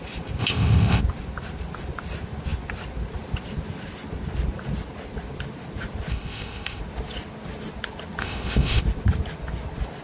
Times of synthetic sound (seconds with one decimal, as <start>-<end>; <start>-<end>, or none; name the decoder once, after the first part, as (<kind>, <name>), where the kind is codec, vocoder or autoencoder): 0.4-1.0 (codec, ZipCodec); 6.1-6.8; 8.2-8.8